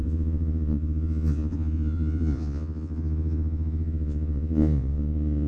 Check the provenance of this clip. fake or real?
fake